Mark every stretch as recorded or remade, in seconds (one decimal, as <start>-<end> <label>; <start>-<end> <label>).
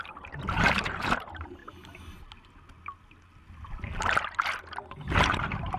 0.0-1.6 remade; 1.6-5.1 recorded; 5.1-5.8 remade